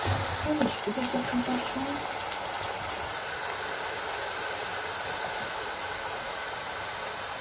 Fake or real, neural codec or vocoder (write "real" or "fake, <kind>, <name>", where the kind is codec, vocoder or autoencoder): real